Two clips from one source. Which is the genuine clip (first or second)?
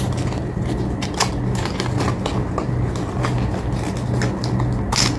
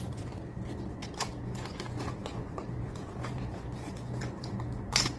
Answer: first